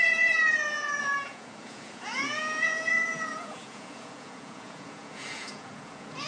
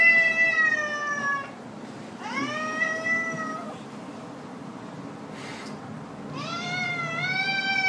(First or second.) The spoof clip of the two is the first